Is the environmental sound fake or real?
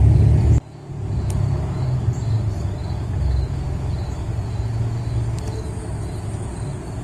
real